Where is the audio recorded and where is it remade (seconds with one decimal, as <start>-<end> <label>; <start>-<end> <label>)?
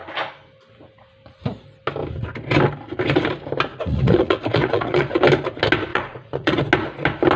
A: 0.0-3.7 recorded; 3.7-5.2 remade; 5.2-5.9 recorded; 5.9-6.6 remade; 6.6-7.4 recorded